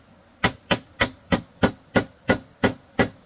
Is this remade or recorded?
recorded